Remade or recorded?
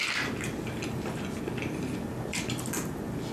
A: recorded